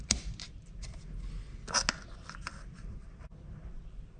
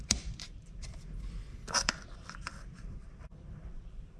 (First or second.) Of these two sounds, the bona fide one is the first